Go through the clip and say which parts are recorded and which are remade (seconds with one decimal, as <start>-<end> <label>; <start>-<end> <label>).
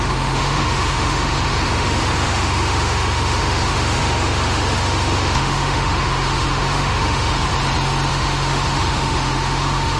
0.0-7.5 remade; 7.5-8.1 recorded; 8.1-10.0 remade